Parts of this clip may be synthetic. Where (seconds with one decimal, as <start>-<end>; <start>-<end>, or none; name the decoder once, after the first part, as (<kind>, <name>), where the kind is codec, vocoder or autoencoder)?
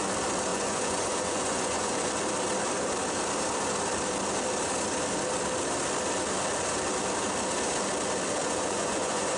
0.5-2.1 (vocoder, Vocos); 8.4-9.4